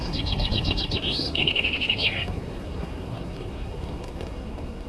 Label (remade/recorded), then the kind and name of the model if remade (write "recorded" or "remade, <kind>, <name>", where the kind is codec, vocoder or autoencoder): remade, codec, SNAC